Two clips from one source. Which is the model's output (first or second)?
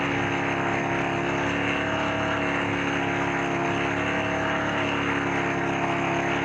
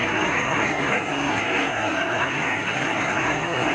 second